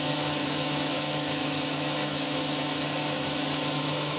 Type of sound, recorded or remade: remade